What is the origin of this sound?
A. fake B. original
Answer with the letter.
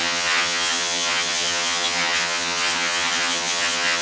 A